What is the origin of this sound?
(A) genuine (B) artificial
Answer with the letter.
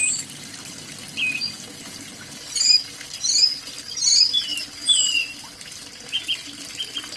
A